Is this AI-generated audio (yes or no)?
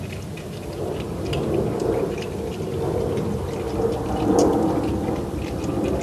no